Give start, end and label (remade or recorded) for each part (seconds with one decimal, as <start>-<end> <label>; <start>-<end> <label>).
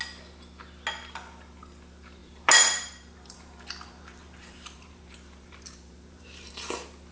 0.0-2.2 recorded; 2.2-6.5 remade; 6.5-7.1 recorded